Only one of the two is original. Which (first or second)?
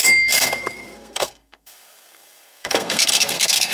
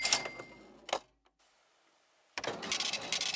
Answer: second